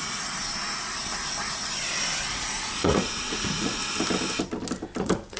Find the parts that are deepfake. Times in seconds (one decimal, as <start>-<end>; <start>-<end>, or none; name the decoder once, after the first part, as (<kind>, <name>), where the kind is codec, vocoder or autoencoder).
0.0-0.4 (vocoder, Vocos); 2.3-3.8; 5.0-5.4